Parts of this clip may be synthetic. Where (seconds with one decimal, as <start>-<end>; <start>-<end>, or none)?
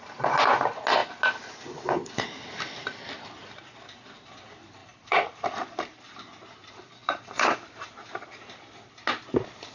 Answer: 4.8-6.0; 7.0-7.9